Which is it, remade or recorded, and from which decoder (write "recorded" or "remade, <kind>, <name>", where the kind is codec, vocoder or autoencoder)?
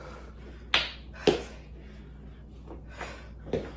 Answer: recorded